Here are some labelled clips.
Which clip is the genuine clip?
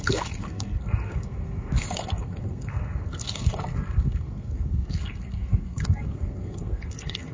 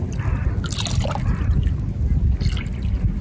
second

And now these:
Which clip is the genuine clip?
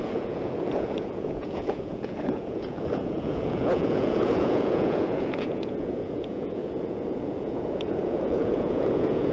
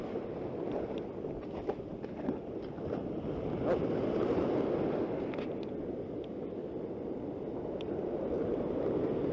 second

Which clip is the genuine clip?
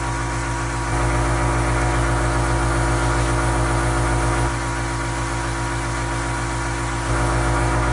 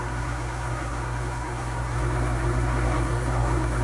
first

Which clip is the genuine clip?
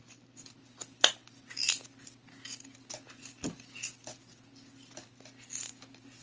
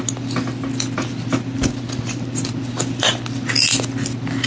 first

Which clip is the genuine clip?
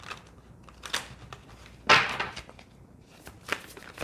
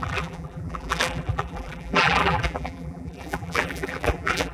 first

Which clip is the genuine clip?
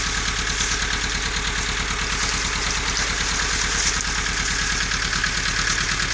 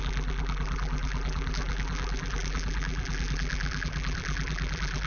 first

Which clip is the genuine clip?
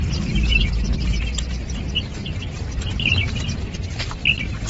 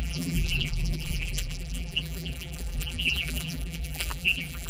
first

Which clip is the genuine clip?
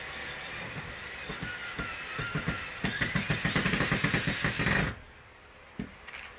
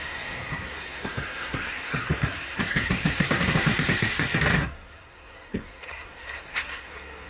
first